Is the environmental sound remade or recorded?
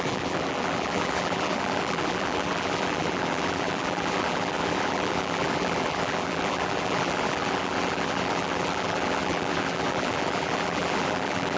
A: remade